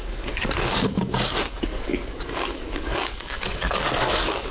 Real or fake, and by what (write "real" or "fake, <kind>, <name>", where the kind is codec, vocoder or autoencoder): fake, codec, DAC